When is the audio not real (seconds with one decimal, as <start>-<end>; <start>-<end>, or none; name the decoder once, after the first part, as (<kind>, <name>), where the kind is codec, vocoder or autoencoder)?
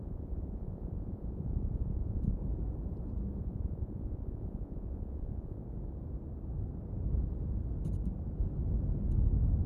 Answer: 0.0-2.4 (vocoder, Vocos); 3.4-5.6